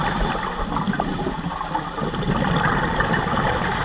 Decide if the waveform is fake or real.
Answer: real